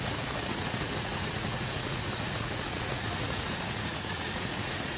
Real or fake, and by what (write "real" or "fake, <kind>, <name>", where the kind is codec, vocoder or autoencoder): fake, vocoder, Vocos